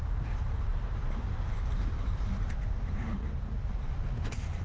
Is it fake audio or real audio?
fake